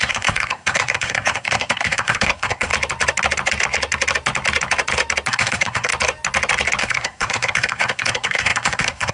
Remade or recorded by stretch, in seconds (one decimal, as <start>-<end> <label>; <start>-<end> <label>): 0.0-2.7 remade; 2.7-5.3 recorded; 5.3-5.9 remade; 5.9-6.8 recorded; 6.8-9.1 remade